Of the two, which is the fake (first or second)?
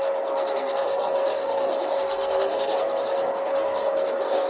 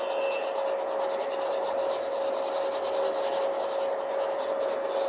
first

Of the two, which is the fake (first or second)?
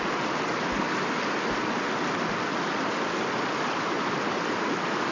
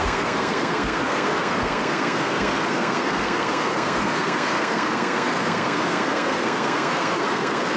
second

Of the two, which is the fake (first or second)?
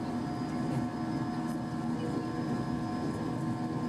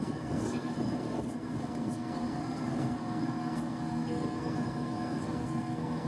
second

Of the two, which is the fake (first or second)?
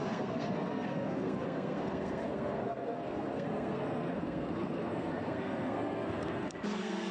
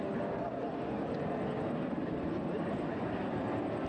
first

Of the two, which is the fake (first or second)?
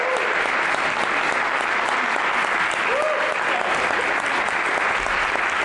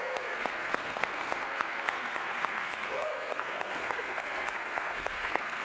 second